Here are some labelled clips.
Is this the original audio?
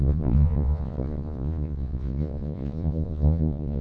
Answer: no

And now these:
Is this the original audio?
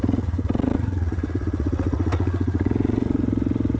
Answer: no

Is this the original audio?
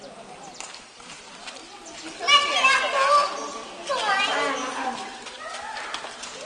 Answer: yes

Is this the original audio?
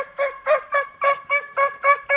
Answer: yes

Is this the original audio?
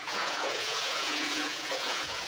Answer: no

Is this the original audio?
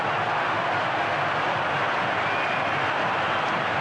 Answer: yes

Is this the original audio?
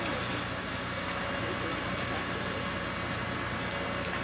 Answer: yes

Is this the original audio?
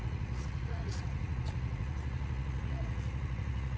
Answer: no